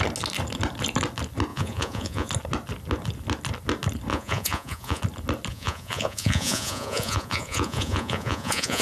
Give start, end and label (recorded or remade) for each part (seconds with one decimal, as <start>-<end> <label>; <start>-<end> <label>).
0.0-1.5 recorded; 1.5-2.3 remade; 2.3-4.1 recorded; 4.1-5.0 remade; 5.0-5.5 recorded; 5.5-8.8 remade